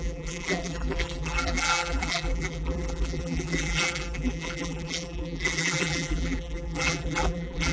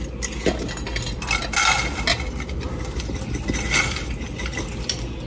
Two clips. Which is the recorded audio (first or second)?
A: second